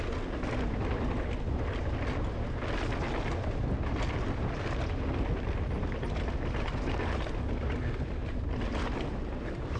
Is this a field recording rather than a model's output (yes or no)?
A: yes